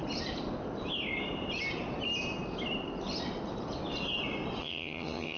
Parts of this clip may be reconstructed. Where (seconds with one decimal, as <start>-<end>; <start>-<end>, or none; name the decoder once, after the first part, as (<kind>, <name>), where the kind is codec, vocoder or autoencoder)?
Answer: 4.6-5.4 (vocoder, HiFi-GAN)